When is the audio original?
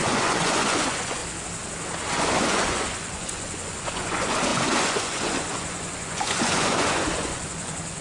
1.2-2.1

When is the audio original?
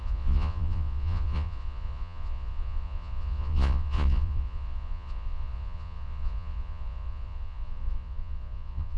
none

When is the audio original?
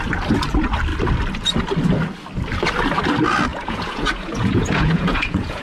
0.0-3.5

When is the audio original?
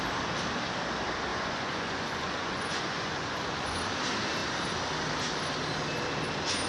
0.0-1.3; 3.8-6.7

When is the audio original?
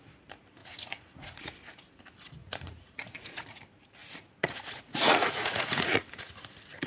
0.0-0.6; 1.4-2.4; 3.6-4.0; 6.3-6.9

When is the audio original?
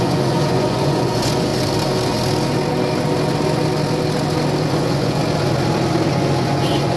1.5-4.7; 5.2-6.1